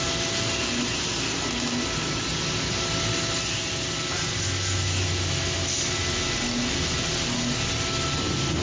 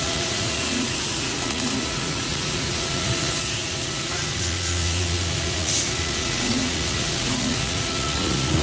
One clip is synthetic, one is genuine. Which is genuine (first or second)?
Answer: first